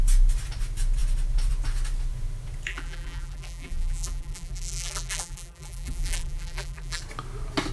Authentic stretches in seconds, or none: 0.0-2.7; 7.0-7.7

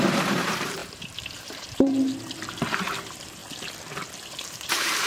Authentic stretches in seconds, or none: 3.4-4.3

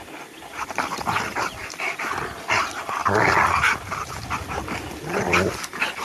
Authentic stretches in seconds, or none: 0.0-1.3; 2.6-6.0